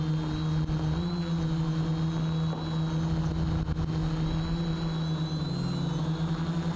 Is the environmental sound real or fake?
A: real